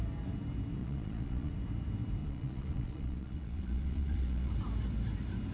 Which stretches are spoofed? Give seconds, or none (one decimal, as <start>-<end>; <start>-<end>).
0.8-1.5; 2.2-4.5